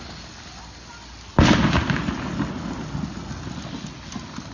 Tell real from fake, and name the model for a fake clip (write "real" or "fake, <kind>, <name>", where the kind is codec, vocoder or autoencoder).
real